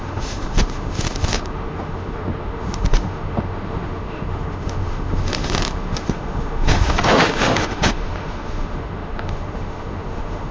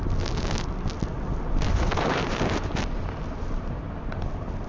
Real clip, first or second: second